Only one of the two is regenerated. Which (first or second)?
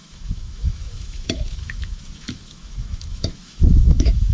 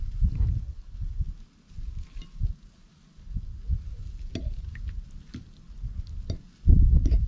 first